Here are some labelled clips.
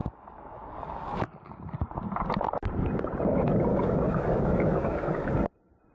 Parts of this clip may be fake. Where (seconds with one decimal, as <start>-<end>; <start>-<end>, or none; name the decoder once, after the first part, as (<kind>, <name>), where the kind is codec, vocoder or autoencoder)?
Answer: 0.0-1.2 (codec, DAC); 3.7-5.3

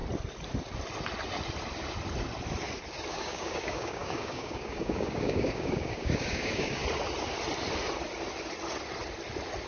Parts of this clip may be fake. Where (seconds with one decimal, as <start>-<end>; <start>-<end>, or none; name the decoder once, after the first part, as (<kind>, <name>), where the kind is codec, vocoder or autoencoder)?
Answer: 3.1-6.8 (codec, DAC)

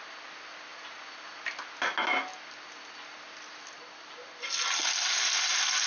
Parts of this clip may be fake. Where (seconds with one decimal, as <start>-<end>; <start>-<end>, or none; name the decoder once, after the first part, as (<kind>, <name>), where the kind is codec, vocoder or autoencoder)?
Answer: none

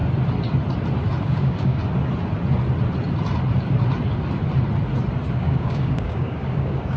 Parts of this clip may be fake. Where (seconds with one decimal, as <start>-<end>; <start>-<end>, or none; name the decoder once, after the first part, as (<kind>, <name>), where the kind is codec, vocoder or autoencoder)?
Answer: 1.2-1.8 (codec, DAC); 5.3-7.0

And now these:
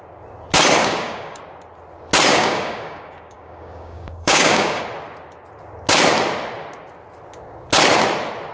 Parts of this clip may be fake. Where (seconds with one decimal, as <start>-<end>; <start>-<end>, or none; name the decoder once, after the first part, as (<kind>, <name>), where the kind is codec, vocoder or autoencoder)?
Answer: 0.8-1.4 (codec, DAC); 2.3-4.8

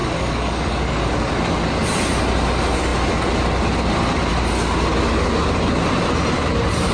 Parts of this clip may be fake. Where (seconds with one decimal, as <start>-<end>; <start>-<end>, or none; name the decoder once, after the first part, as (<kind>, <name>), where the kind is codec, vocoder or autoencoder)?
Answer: 0.0-1.3 (codec, DAC)